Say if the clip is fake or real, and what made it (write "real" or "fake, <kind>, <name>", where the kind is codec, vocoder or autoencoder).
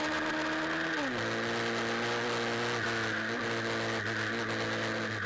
real